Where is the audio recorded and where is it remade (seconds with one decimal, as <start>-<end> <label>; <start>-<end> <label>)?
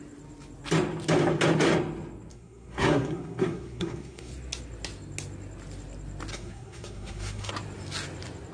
0.0-2.3 recorded; 2.3-4.3 remade; 4.3-6.3 recorded; 6.3-7.5 remade; 7.5-8.5 recorded